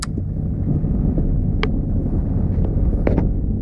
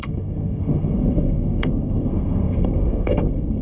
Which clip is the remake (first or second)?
second